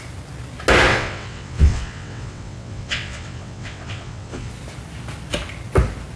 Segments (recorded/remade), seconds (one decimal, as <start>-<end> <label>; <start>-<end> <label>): 0.0-0.9 recorded; 0.9-4.5 remade; 4.5-6.2 recorded